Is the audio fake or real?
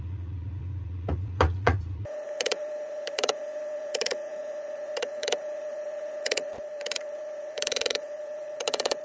fake